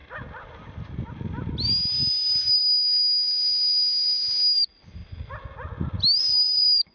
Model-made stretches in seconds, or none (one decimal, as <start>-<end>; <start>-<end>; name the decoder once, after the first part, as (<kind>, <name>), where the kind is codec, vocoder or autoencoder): 2.1-2.6 (vocoder, BigVGAN v2); 4.6-5.0; 6.2-6.9